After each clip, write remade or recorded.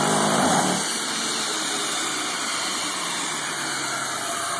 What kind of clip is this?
remade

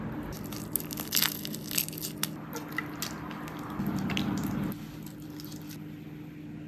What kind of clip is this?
recorded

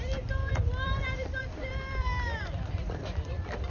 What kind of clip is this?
remade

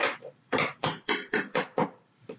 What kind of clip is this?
remade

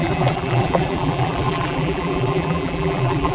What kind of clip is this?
remade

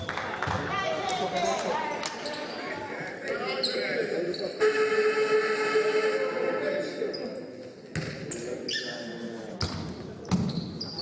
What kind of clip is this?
recorded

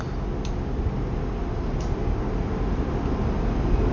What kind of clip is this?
recorded